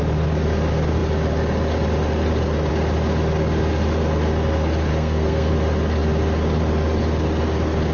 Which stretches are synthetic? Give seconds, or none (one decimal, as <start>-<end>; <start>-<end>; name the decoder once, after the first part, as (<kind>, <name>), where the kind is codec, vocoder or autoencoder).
4.9-5.5 (codec, SNAC)